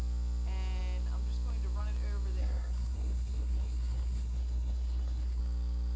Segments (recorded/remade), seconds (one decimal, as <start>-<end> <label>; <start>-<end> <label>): 0.0-2.4 recorded; 2.4-5.4 remade; 5.4-6.0 recorded